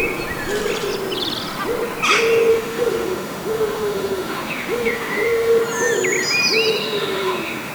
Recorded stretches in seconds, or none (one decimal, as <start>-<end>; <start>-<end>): 0.0-2.5; 5.6-6.8